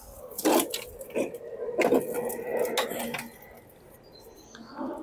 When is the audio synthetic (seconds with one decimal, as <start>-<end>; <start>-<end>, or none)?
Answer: none